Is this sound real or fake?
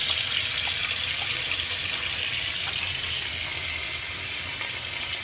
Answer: real